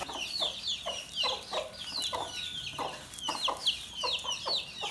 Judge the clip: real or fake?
real